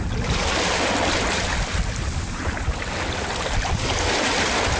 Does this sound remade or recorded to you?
recorded